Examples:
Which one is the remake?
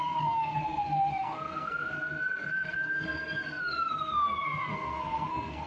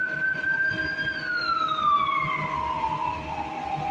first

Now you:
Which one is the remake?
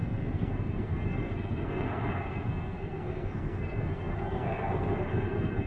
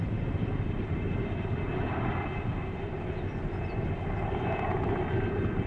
first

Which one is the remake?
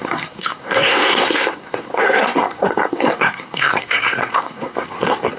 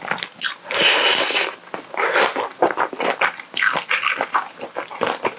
first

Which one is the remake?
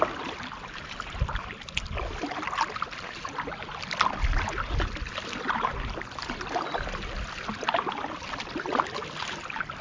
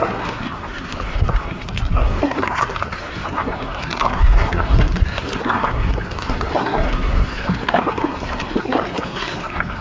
second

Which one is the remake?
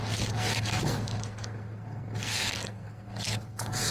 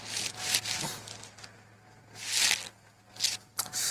first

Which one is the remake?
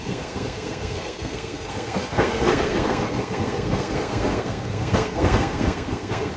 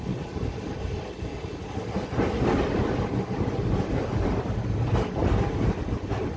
first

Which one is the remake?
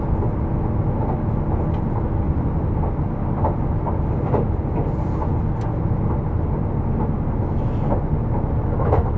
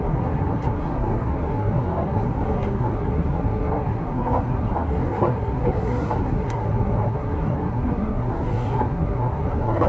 second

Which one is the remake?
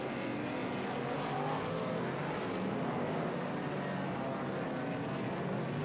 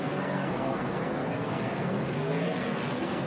second